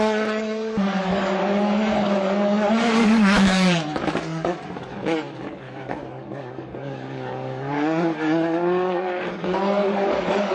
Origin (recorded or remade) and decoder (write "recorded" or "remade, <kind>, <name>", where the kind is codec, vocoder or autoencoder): remade, codec, DAC